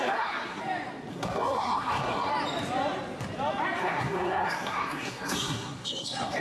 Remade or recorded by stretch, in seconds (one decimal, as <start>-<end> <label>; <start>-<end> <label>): 0.0-0.6 remade; 0.6-1.1 recorded; 1.1-2.3 remade; 2.3-3.8 recorded; 3.8-6.4 remade